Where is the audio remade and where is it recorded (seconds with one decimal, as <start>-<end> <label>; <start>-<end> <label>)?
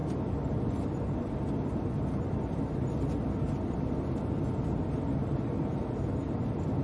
0.0-6.8 recorded